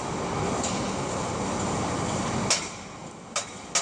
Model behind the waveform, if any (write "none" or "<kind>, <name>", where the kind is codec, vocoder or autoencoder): none